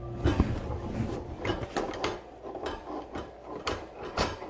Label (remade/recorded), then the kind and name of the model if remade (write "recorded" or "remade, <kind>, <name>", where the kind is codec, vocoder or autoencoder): recorded